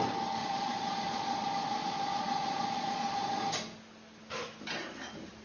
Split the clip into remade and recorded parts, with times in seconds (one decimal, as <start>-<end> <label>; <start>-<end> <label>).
0.0-0.4 recorded; 0.4-3.5 remade; 3.5-5.4 recorded